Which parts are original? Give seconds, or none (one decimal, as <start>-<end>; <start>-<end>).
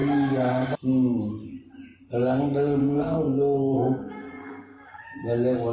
0.0-2.8; 5.0-5.7